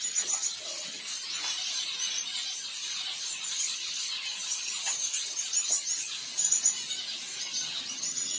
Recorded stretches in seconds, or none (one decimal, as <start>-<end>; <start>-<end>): 1.0-3.5; 6.2-7.4